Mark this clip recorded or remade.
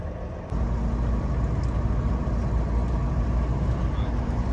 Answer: recorded